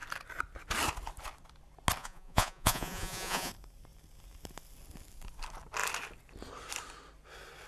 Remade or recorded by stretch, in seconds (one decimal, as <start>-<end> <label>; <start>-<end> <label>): 0.0-2.0 recorded; 2.0-3.5 remade; 3.5-7.7 recorded